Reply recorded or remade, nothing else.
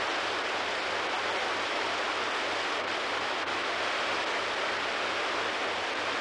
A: recorded